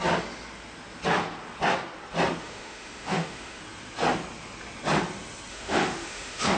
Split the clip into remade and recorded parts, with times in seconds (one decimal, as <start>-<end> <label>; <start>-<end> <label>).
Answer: 0.0-2.4 recorded; 2.4-3.6 remade; 3.6-5.5 recorded; 5.5-6.6 remade